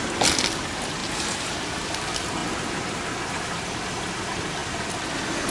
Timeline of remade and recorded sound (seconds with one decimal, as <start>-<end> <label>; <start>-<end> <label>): 0.0-1.0 recorded; 1.0-1.5 remade; 1.5-2.4 recorded; 2.4-3.5 remade; 3.5-5.5 recorded